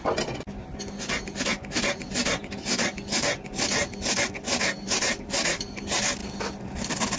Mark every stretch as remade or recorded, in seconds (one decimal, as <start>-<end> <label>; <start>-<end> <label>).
0.0-7.2 recorded